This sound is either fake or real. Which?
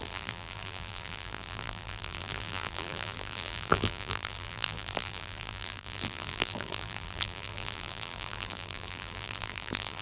fake